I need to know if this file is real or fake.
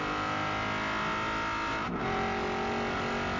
real